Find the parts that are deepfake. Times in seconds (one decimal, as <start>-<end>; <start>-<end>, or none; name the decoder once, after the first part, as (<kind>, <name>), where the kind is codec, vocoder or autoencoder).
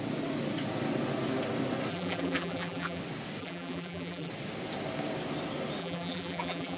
1.9-3.0 (vocoder, BigVGAN v2); 3.4-4.3; 5.8-6.8